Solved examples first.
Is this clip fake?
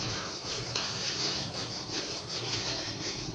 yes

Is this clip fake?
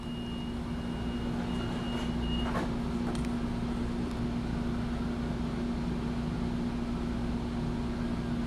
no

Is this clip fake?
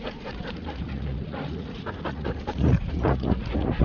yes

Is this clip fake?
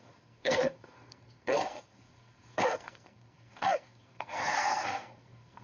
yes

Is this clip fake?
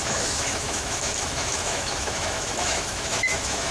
yes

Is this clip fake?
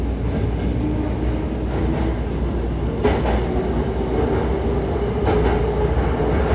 no